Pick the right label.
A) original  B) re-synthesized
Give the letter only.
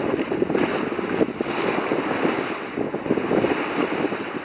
A